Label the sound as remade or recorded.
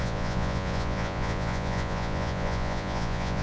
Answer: remade